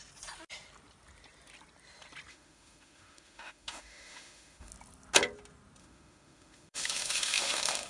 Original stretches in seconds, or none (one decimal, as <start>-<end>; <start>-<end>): 0.0-2.3; 4.7-5.8